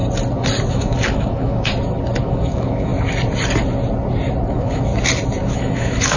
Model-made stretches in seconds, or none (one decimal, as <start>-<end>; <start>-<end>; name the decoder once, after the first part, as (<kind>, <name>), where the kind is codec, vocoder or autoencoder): 0.7-1.7 (autoencoder, DAC-VAE); 2.2-2.9; 4.5-4.9; 5.5-6.2

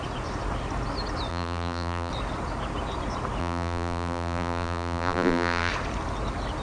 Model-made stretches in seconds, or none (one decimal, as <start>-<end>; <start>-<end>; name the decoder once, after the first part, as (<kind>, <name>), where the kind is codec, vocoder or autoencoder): 1.3-2.1 (vocoder, BigVGAN v2); 3.4-5.7

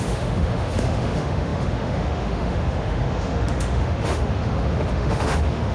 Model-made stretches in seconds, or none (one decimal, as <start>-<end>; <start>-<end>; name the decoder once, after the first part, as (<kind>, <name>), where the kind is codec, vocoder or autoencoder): 0.0-5.7 (autoencoder, DAC-VAE)

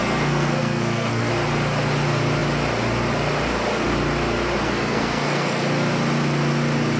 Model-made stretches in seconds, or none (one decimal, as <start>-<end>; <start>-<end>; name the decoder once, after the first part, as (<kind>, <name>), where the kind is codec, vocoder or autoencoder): 0.0-1.3 (codec, SNAC); 4.6-5.6

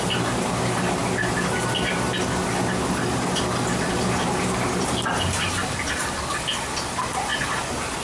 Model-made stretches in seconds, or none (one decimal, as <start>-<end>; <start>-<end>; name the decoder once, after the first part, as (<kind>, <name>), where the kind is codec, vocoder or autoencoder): none